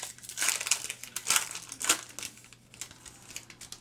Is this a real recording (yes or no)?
yes